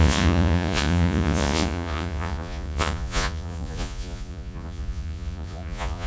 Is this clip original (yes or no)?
no